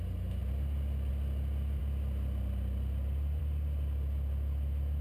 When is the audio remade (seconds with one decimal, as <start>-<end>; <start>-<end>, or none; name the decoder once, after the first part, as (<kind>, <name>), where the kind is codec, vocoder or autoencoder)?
none